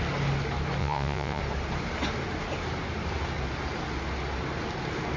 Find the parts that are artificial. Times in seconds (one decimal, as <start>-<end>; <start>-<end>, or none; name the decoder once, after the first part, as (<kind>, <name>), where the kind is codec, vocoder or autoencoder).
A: 0.8-1.4 (vocoder, Vocos)